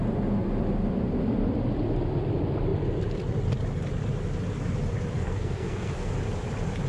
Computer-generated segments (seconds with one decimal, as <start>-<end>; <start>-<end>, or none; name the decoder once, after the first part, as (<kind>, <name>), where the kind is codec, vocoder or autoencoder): 5.2-6.1 (codec, SNAC)